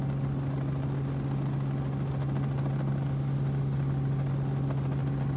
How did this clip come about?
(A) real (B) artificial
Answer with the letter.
A